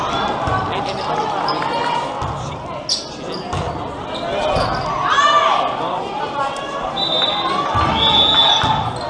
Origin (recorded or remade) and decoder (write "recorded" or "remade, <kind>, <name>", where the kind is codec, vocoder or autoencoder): recorded